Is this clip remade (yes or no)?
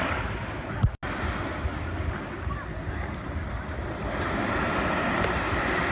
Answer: no